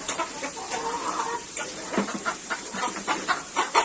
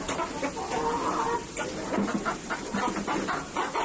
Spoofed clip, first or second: first